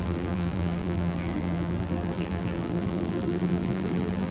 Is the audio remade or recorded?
remade